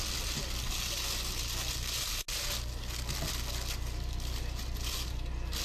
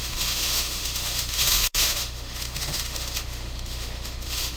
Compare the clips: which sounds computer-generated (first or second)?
second